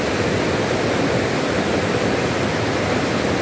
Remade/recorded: recorded